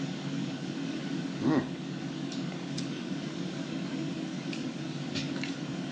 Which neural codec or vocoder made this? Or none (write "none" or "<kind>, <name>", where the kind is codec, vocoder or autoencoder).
codec, DAC